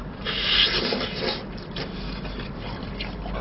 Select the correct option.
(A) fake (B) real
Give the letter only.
B